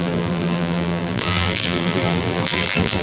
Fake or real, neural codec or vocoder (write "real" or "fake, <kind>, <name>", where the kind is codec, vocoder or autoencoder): fake, vocoder, BigVGAN v2